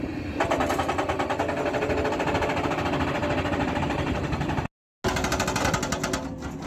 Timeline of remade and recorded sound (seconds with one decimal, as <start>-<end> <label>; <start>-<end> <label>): 0.0-6.7 recorded